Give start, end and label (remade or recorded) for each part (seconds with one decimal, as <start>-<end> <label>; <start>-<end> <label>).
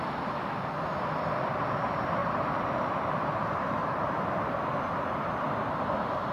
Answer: 0.0-2.2 recorded; 2.2-5.3 remade; 5.3-6.3 recorded